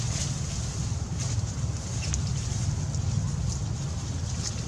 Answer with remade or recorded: recorded